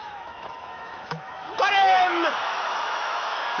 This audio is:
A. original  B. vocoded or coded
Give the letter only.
B